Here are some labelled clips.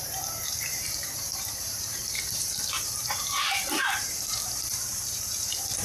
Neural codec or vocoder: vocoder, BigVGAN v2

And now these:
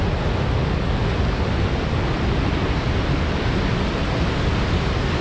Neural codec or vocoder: none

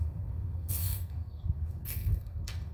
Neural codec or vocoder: codec, SNAC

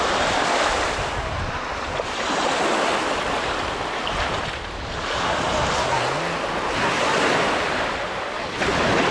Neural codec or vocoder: none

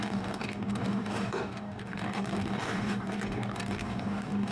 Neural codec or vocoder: codec, DAC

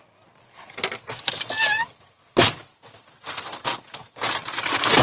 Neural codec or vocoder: none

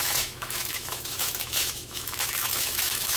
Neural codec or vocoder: autoencoder, DAC-VAE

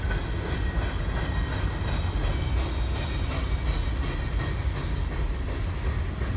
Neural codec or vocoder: none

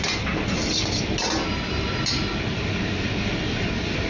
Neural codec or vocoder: none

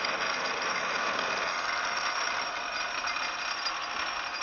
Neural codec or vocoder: none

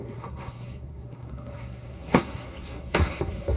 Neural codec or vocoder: codec, SNAC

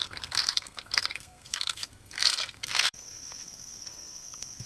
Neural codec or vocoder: codec, SNAC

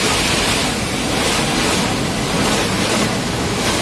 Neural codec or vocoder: none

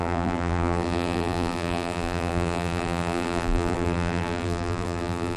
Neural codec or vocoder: vocoder, BigVGAN v2